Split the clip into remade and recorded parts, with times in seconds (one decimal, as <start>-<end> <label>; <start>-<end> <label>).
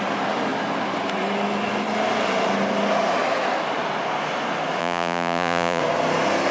0.0-4.8 recorded; 4.8-5.8 remade; 5.8-6.5 recorded